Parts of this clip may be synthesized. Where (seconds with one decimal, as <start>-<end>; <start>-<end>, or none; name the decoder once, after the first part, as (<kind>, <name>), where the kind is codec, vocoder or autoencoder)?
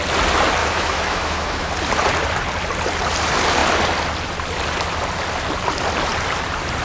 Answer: 0.6-1.7 (autoencoder, DAC-VAE)